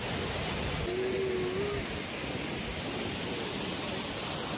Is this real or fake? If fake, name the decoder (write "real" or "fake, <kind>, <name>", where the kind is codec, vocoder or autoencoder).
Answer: real